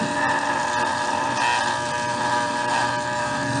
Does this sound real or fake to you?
real